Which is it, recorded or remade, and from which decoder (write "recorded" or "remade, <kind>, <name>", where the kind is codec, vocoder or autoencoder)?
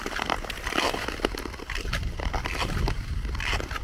recorded